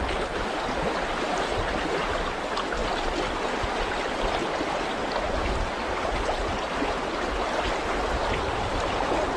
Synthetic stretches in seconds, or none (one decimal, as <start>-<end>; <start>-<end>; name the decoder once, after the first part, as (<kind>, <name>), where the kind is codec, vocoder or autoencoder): none